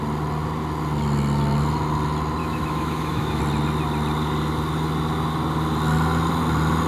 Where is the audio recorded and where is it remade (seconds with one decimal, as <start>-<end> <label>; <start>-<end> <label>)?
0.0-2.4 recorded; 2.4-3.4 remade; 3.4-6.9 recorded